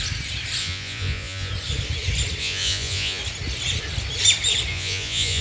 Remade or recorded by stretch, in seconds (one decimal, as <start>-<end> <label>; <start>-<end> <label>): 0.0-0.6 recorded; 0.6-1.5 remade; 1.5-2.4 recorded; 2.4-3.2 remade; 3.2-4.7 recorded; 4.7-5.4 remade